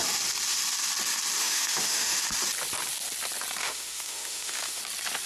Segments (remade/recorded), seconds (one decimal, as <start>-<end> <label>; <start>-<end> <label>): 0.0-1.4 recorded; 1.4-2.2 remade; 2.2-3.6 recorded; 3.6-4.8 remade; 4.8-5.3 recorded